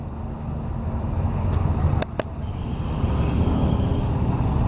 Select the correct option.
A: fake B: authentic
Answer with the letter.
B